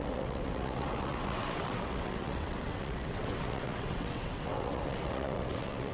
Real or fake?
fake